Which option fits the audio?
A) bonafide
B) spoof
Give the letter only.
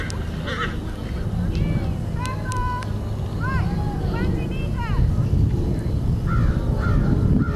A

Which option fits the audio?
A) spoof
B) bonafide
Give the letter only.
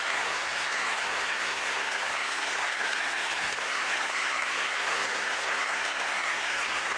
A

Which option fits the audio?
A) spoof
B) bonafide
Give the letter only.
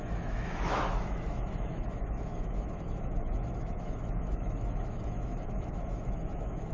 A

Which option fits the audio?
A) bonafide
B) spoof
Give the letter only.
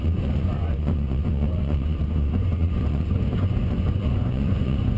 B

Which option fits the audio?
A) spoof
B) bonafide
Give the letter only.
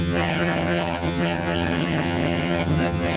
A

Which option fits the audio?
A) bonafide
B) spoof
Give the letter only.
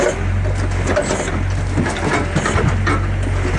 A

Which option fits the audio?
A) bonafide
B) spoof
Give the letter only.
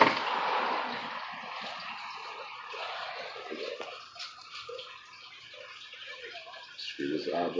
A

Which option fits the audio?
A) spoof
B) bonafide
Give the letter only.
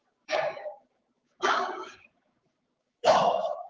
A